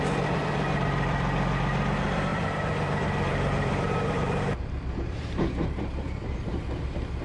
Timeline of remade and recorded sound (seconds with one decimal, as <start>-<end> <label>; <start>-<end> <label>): 0.0-2.3 recorded; 2.3-6.6 remade; 6.6-7.2 recorded